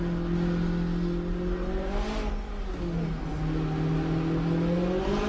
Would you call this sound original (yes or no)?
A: yes